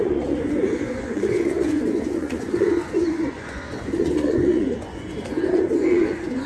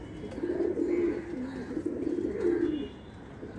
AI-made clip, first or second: first